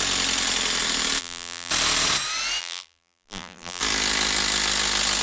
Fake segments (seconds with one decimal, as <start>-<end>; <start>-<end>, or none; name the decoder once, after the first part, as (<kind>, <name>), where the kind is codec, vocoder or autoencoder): 1.2-1.7 (vocoder, BigVGAN v2); 2.6-3.8